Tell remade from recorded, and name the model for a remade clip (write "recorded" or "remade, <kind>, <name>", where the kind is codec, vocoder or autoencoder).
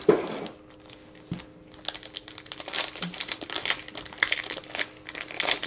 recorded